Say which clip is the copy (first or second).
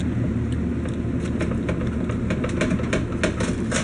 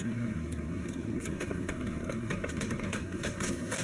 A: second